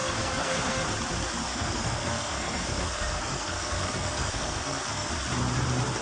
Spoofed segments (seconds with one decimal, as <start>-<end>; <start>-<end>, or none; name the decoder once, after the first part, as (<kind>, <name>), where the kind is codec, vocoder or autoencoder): 0.0-0.8 (codec, SNAC); 1.5-5.1